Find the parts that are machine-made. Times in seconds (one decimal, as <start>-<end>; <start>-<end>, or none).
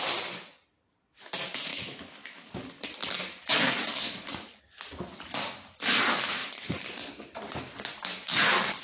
1.7-2.6